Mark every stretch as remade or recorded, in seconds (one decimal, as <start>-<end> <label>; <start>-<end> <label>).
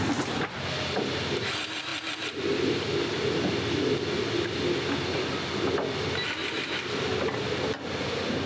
0.0-8.5 recorded